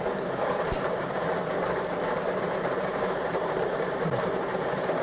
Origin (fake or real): fake